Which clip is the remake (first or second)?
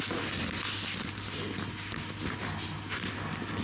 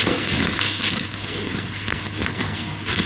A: second